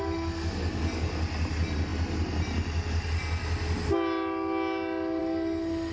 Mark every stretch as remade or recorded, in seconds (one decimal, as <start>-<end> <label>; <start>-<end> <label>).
0.0-5.9 recorded